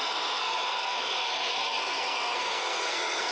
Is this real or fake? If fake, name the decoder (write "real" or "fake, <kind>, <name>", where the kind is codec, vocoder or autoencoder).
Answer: fake, codec, SNAC